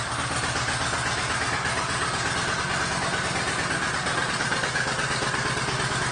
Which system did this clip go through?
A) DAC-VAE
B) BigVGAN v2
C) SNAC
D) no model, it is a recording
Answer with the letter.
D